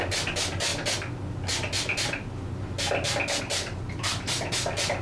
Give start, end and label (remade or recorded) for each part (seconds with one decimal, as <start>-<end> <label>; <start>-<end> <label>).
0.0-5.0 recorded